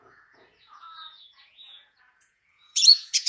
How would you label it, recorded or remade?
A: remade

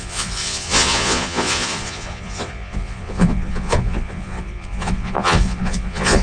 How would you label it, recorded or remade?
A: remade